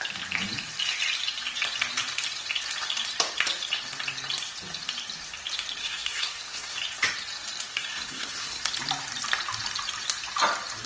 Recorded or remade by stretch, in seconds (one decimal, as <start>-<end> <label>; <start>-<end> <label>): 0.0-5.8 recorded; 5.8-6.8 remade; 6.8-7.7 recorded; 7.7-8.6 remade; 8.6-10.9 recorded